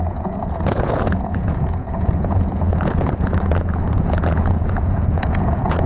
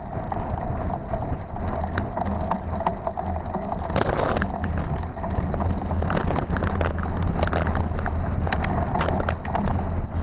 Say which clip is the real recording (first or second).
second